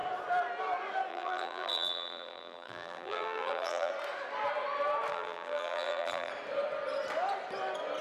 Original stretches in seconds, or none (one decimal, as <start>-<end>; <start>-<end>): 0.0-1.1; 3.9-5.1; 6.3-8.0

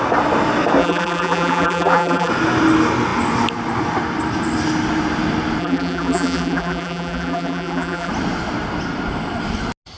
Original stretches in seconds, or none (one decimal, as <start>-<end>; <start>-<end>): 0.0-0.8; 2.3-5.6; 8.1-10.0